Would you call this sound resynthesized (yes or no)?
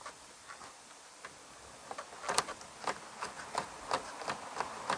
no